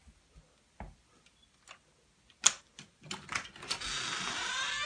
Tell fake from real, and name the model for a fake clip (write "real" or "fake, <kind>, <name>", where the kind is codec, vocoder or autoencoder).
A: real